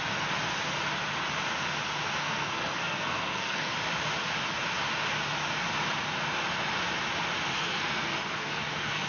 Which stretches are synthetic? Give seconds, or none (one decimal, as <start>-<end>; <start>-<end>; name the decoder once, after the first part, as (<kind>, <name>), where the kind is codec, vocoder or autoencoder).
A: 2.2-3.7 (codec, SNAC); 7.5-9.1